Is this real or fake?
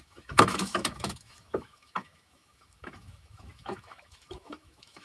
fake